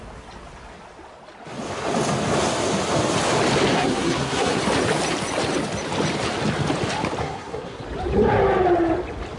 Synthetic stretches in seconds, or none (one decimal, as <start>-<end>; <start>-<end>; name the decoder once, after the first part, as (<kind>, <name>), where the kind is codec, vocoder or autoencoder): 3.7-4.6 (codec, SNAC); 7.2-7.8